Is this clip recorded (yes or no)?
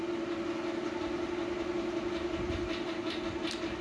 yes